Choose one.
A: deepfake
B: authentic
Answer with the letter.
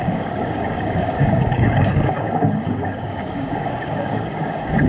A